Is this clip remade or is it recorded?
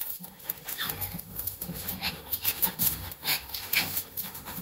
remade